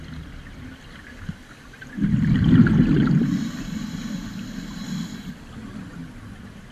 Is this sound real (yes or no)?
yes